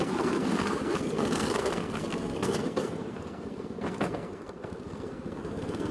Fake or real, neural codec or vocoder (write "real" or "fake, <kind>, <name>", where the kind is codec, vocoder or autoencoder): fake, codec, SNAC